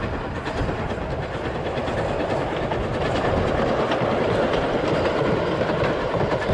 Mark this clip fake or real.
real